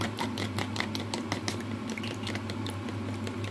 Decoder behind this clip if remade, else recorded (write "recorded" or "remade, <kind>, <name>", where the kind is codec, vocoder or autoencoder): recorded